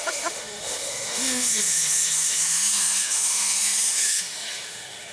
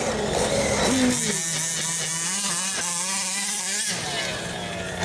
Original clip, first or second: second